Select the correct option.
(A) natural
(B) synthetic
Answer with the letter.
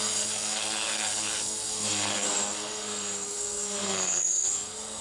B